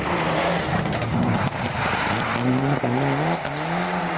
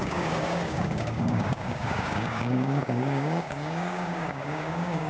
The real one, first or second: first